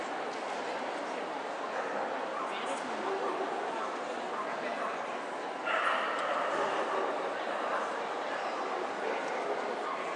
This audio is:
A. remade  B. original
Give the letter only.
B